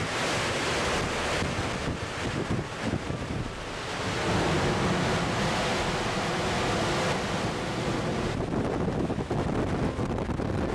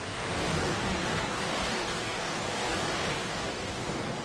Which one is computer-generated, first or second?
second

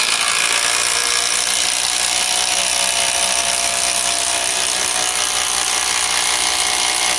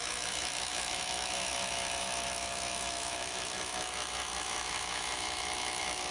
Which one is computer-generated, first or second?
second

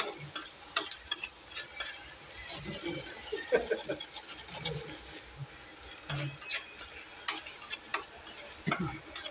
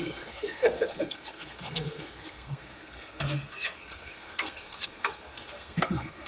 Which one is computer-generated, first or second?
second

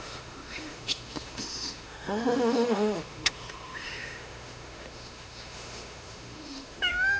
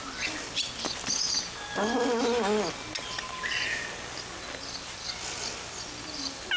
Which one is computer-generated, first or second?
first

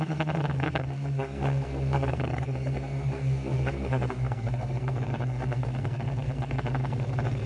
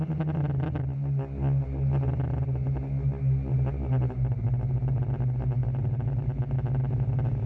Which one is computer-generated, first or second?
first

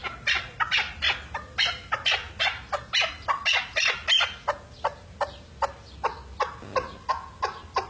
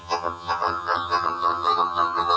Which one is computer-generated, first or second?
second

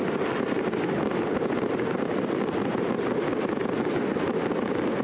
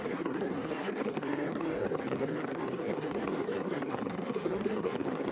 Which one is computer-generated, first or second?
second